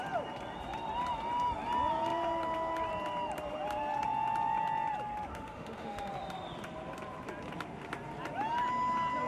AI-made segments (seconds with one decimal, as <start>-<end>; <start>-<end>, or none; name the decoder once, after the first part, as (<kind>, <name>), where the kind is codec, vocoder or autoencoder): 5.3-6.1 (autoencoder, DAC-VAE)